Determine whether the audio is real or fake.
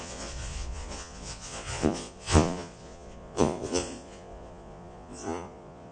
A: fake